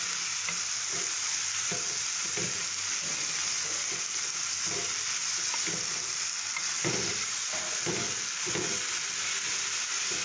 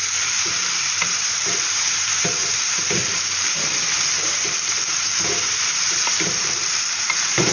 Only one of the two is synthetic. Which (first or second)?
second